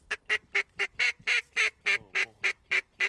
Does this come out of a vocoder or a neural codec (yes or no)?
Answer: no